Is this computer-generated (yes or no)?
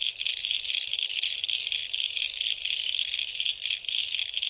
no